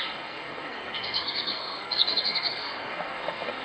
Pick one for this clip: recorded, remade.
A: remade